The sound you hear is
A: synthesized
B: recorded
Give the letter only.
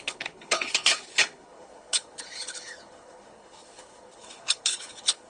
A